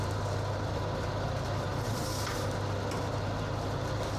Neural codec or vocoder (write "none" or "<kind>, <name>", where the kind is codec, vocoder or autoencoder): none